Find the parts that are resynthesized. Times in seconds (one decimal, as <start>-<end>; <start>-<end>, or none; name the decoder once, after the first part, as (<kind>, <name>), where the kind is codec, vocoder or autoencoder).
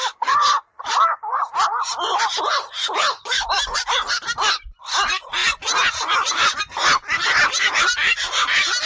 2.8-3.5 (autoencoder, DAC-VAE)